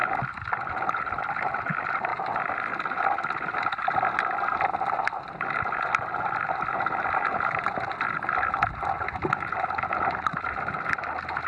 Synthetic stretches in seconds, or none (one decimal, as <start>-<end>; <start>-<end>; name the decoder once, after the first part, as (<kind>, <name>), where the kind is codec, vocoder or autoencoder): none

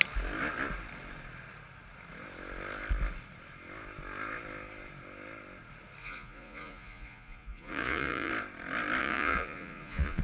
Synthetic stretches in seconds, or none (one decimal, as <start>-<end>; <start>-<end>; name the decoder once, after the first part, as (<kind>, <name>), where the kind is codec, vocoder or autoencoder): 6.0-8.3 (vocoder, Vocos); 9.0-10.2